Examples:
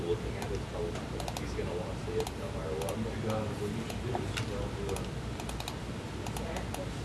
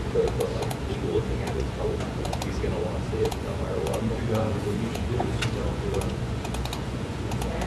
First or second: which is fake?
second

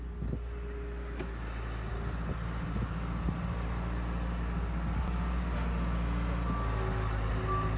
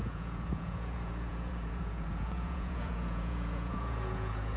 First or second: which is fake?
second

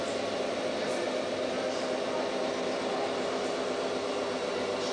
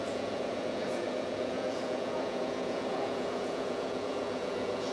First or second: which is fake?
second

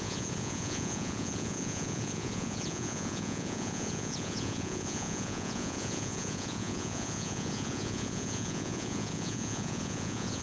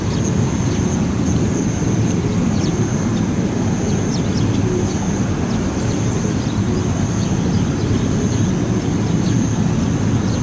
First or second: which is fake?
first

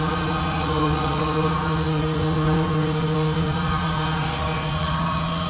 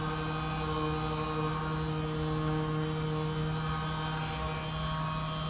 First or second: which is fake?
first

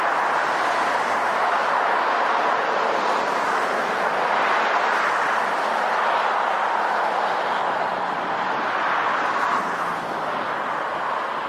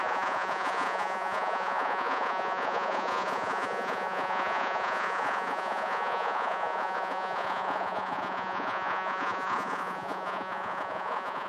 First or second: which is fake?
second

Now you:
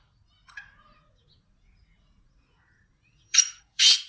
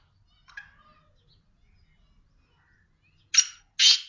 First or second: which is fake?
first